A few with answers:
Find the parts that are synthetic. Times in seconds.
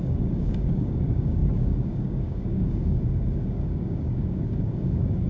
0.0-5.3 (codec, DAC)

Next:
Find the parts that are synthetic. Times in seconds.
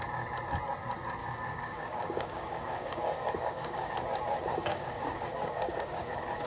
1.2-3.9 (codec, DAC); 4.5-6.1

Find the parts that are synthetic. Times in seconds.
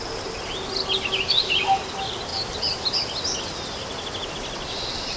none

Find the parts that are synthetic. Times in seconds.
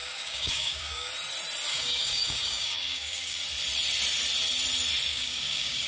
0.0-1.1 (codec, DAC); 1.7-3.4; 5.1-5.9